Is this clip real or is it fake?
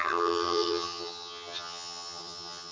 fake